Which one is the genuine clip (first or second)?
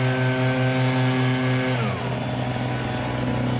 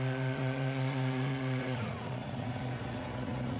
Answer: first